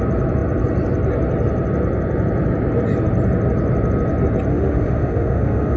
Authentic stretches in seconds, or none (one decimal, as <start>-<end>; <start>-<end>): 0.0-4.5